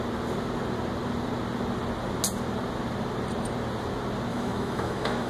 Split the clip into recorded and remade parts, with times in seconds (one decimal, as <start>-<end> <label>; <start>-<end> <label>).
0.0-4.3 recorded; 4.3-5.3 remade